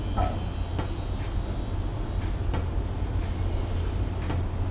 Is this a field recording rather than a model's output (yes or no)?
yes